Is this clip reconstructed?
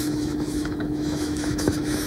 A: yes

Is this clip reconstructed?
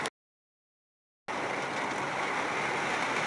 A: no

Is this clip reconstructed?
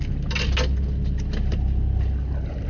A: no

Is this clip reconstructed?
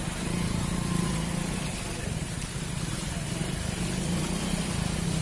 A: no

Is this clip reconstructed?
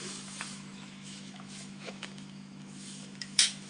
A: yes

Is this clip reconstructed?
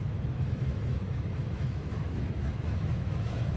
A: yes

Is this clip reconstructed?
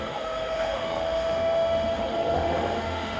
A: yes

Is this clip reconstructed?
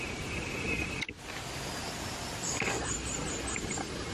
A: no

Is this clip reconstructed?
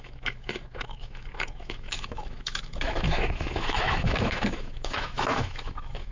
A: yes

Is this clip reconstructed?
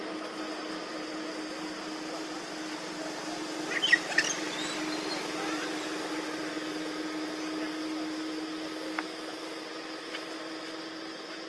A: no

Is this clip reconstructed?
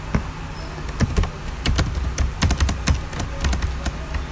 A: no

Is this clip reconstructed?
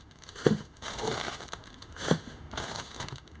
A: yes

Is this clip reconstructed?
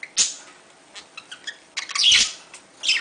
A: no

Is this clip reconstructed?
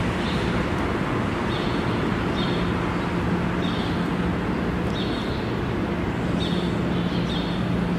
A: no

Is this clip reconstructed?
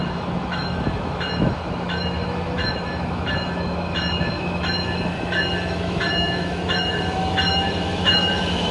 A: yes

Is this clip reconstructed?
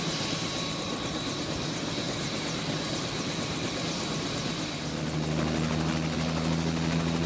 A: no